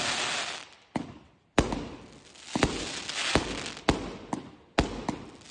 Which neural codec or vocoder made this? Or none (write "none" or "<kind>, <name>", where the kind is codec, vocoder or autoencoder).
none